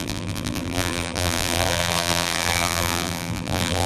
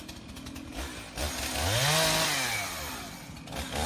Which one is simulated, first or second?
first